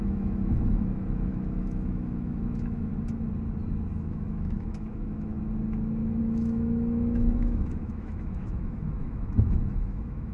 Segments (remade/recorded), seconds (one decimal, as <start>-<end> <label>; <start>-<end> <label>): 0.0-2.9 remade; 2.9-3.9 recorded; 3.9-5.3 remade; 5.3-6.2 recorded; 6.2-10.3 remade